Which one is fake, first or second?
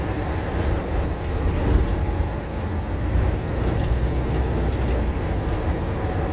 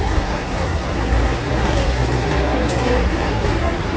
second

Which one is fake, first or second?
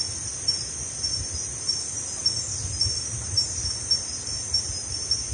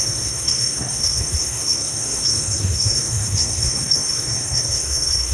second